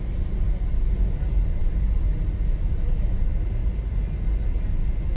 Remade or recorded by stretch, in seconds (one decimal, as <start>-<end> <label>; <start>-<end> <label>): 0.0-5.2 recorded

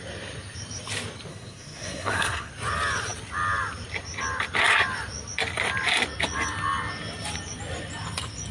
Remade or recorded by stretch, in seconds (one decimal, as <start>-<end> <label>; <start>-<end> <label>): 0.0-1.3 recorded; 1.3-2.5 remade; 2.5-8.5 recorded

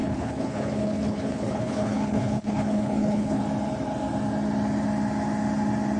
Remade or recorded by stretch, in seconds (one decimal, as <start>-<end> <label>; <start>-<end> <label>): 0.0-3.4 remade; 3.4-6.0 recorded